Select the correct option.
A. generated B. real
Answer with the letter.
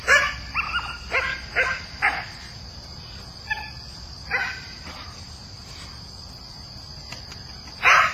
B